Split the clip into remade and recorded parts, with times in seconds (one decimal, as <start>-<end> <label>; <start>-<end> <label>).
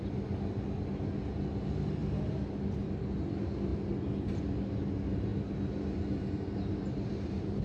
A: 0.0-7.6 recorded